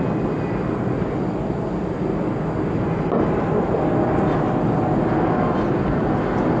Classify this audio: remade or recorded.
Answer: recorded